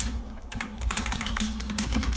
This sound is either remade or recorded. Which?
remade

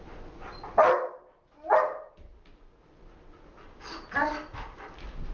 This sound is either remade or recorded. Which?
recorded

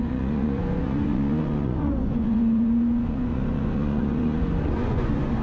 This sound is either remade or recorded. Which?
remade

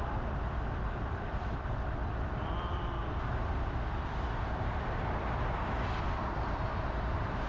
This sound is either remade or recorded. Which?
remade